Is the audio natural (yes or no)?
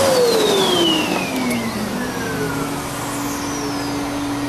yes